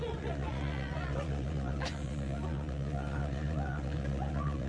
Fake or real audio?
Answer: fake